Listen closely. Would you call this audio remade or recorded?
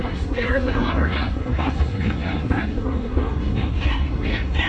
remade